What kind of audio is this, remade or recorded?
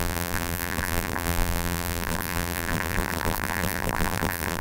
remade